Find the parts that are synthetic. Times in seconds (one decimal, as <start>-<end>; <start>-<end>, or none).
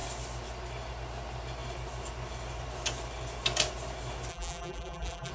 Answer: 4.3-5.3